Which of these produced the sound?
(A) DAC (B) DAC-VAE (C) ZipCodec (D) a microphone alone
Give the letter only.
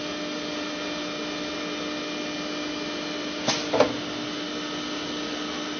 D